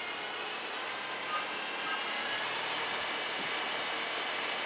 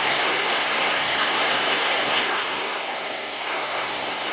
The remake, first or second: second